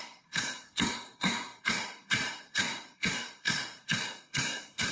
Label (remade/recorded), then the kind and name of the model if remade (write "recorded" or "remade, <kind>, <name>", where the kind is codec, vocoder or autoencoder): remade, codec, SNAC